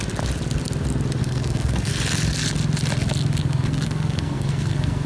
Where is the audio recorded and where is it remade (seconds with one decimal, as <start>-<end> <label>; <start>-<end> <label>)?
0.0-1.2 recorded; 1.2-1.9 remade; 1.9-3.4 recorded; 3.4-5.1 remade